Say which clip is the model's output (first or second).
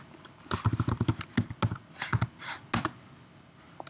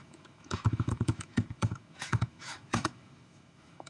second